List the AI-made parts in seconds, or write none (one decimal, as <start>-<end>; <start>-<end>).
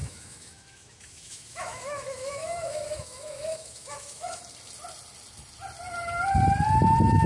0.0-4.4